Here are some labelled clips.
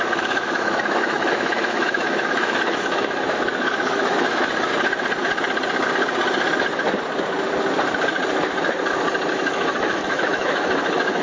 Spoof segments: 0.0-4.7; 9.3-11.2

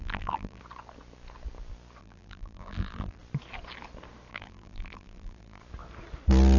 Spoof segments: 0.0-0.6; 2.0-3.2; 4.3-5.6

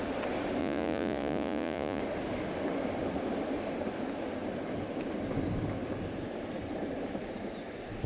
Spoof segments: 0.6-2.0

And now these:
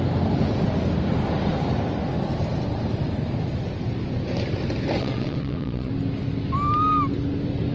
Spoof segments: 5.0-5.9